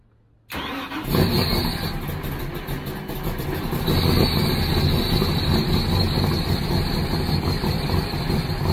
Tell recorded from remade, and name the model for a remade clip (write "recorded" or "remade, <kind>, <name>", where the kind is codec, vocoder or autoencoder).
recorded